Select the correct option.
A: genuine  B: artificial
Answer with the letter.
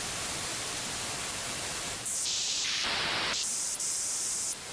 B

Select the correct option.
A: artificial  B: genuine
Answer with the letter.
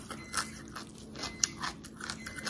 B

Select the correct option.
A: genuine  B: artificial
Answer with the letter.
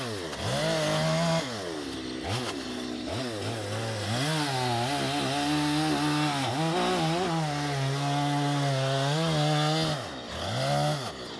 A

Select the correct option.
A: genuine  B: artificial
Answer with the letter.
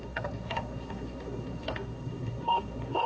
B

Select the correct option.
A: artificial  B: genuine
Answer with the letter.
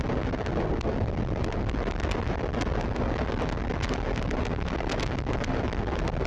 B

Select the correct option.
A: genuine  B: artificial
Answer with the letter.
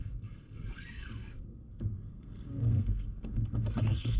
B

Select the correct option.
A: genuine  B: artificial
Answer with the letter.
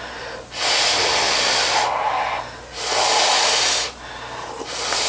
A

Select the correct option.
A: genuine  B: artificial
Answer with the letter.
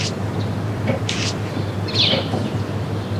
A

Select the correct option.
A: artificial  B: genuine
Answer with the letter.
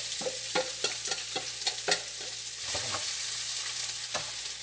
B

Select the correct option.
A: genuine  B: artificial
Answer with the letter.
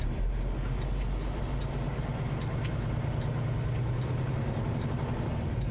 A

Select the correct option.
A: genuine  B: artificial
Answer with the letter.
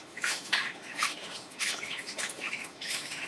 B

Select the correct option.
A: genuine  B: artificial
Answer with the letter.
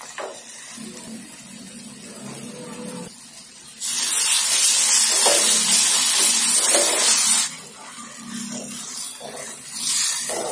A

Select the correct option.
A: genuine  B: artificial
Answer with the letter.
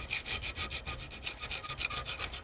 A